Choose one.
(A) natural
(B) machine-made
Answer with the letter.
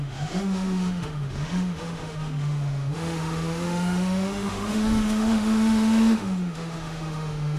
B